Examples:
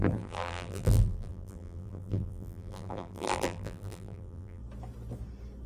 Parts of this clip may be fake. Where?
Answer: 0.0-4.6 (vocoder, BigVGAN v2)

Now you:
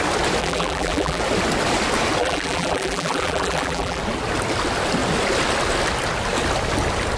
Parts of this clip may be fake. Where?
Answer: 0.4-1.2 (vocoder, BigVGAN v2); 2.2-4.0

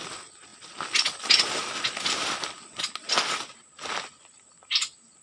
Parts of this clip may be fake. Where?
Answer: none